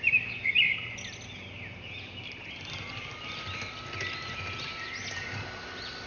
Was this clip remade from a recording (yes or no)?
yes